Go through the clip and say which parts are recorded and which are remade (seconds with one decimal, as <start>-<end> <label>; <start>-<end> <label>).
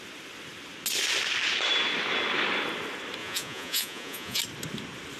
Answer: 0.0-3.2 recorded; 3.2-4.4 remade; 4.4-5.2 recorded